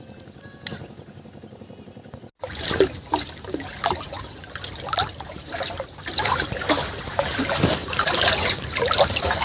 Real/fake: real